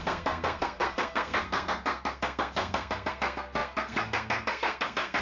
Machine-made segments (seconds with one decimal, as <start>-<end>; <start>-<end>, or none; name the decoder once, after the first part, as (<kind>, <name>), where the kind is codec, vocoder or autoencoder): 0.0-5.2 (codec, SNAC)